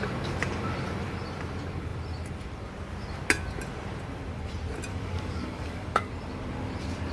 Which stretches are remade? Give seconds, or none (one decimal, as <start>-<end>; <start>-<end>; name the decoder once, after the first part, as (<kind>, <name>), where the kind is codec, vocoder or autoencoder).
4.9-6.1 (codec, DAC)